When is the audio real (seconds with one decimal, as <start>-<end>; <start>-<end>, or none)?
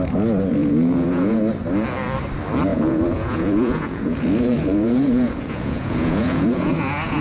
0.0-0.6; 1.4-2.7